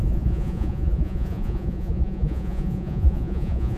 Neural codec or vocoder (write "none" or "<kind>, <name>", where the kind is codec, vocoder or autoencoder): vocoder, Vocos